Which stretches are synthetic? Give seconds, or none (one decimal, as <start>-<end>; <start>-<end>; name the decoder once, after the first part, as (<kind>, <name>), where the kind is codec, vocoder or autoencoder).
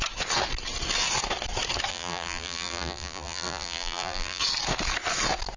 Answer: 1.9-4.4 (vocoder, BigVGAN v2)